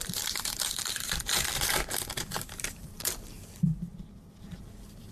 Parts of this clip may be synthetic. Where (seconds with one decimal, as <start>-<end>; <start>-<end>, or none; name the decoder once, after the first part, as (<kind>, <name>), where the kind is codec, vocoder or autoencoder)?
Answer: 0.0-3.7 (vocoder, BigVGAN v2); 4.4-5.1